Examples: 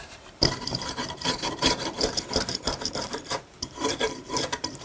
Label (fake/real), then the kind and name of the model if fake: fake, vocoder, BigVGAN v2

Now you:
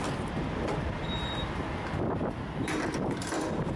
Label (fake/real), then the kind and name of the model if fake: real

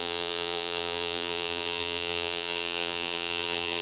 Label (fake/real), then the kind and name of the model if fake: fake, vocoder, BigVGAN v2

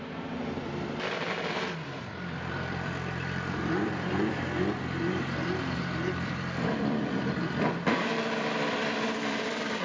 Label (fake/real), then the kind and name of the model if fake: fake, vocoder, BigVGAN v2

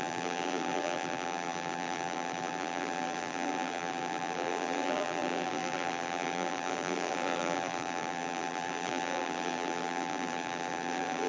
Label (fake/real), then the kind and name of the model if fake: fake, vocoder, BigVGAN v2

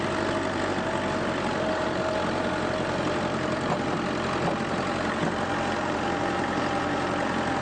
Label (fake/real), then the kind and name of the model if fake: real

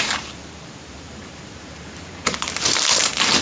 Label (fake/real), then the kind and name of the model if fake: fake, vocoder, BigVGAN v2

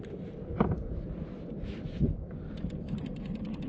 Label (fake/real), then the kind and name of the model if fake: fake, vocoder, BigVGAN v2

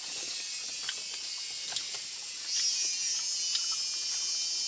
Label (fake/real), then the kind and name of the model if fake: real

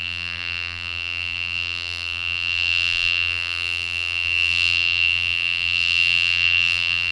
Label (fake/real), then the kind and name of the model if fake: fake, vocoder, BigVGAN v2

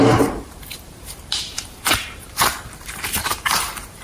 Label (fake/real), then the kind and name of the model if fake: fake, vocoder, BigVGAN v2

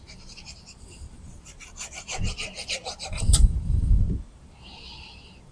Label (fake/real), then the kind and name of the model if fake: fake, vocoder, BigVGAN v2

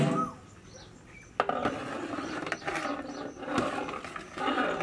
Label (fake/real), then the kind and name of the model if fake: real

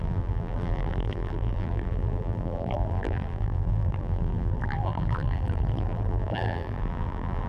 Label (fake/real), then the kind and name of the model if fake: fake, vocoder, BigVGAN v2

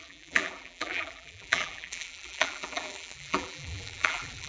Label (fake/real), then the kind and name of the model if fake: fake, vocoder, BigVGAN v2